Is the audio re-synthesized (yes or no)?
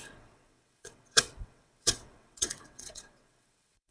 yes